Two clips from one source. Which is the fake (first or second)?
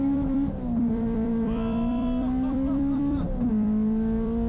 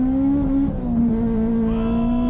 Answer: first